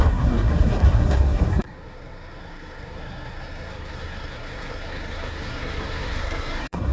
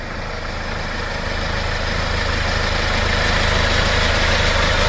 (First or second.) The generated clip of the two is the first